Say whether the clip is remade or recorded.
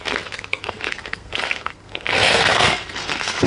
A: remade